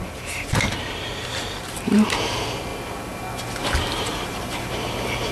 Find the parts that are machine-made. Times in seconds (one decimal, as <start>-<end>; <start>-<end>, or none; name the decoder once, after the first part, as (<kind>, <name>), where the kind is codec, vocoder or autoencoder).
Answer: 0.0-2.7 (vocoder, BigVGAN v2); 3.6-5.3

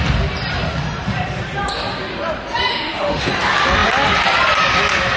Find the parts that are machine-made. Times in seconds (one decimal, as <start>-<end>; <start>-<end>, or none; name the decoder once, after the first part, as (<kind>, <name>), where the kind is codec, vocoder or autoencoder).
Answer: 2.7-3.3 (autoencoder, DAC-VAE)